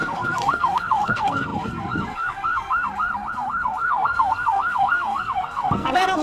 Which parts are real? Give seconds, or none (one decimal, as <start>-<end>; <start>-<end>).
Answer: none